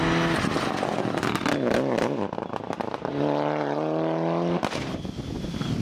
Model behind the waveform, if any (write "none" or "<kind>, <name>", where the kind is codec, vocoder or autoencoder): none